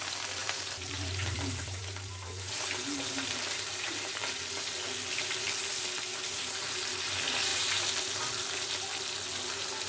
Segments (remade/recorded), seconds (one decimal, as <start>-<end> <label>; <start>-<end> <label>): 0.0-0.4 recorded; 0.4-4.4 remade; 4.4-7.5 recorded; 7.5-8.2 remade; 8.2-9.9 recorded